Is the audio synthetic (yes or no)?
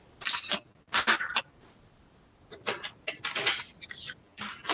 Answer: no